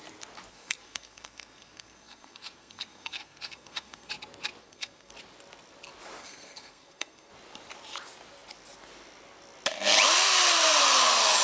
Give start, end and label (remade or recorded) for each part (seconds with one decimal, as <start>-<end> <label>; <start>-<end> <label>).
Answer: 0.0-0.5 recorded; 0.5-4.1 remade; 4.1-4.6 recorded; 4.6-5.1 remade; 5.1-6.2 recorded; 6.2-7.3 remade; 7.3-11.4 recorded